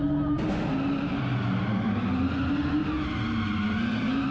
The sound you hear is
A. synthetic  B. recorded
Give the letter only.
B